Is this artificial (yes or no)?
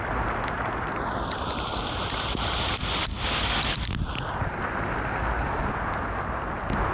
no